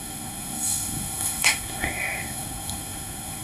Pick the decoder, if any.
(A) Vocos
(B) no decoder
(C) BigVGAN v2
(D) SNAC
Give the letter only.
D